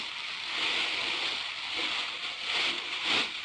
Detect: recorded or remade recorded